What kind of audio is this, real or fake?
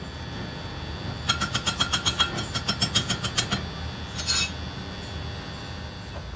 real